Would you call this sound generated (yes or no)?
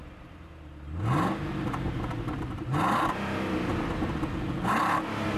no